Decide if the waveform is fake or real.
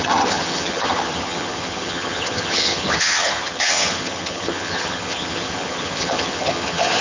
fake